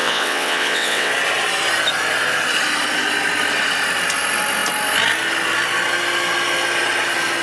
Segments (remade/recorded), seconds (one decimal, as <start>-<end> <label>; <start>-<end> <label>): 0.0-1.1 remade; 1.1-7.4 recorded